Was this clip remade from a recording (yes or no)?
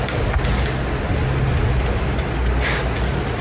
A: no